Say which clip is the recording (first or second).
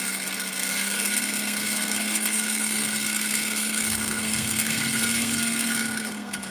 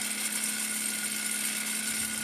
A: second